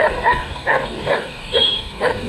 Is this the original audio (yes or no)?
no